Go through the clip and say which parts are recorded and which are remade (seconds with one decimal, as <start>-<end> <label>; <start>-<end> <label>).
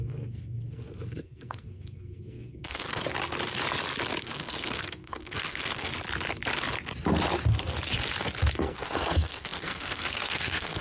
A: 0.0-3.0 remade; 3.0-4.2 recorded; 4.2-5.9 remade; 5.9-8.5 recorded; 8.5-10.8 remade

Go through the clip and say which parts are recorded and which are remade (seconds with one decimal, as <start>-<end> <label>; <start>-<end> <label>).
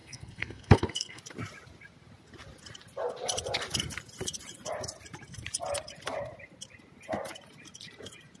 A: 0.0-1.2 remade; 1.2-8.4 recorded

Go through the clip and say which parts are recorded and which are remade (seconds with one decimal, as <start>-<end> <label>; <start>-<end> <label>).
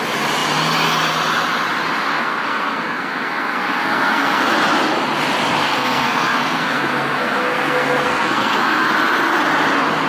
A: 0.0-2.1 recorded; 2.1-4.5 remade; 4.5-5.6 recorded; 5.6-8.9 remade; 8.9-10.1 recorded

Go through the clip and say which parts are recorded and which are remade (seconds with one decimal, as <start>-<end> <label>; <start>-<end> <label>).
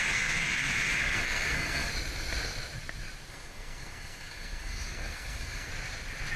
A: 0.0-1.9 remade; 1.9-3.3 recorded; 3.3-5.7 remade; 5.7-6.4 recorded